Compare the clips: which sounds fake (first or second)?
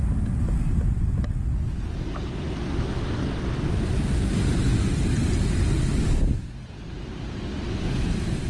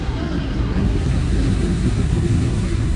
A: second